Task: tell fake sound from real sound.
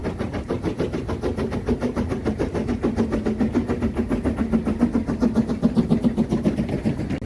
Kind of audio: real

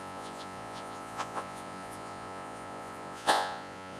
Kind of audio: fake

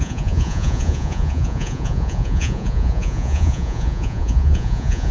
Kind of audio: fake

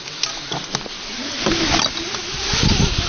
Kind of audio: real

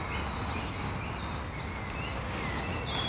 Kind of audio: real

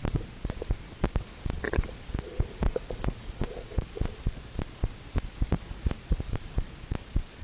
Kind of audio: fake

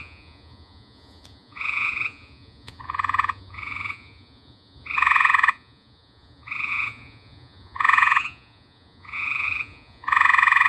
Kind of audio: fake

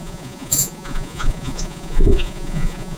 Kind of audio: fake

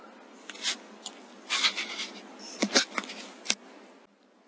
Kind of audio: real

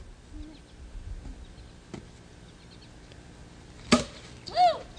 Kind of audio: real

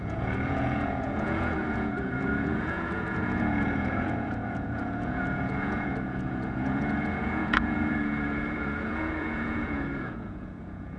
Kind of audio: fake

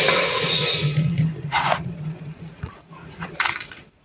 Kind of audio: fake